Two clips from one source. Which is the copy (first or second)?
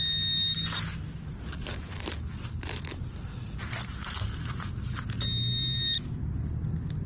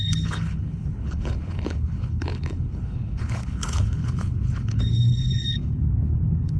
second